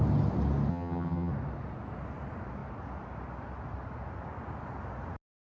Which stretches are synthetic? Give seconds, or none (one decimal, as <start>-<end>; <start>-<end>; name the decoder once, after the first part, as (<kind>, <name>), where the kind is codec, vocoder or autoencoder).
0.7-1.3 (vocoder, HiFi-GAN)